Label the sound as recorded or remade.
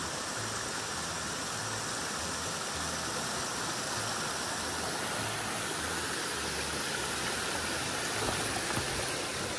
recorded